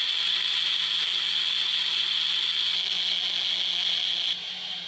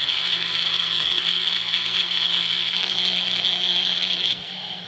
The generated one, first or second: second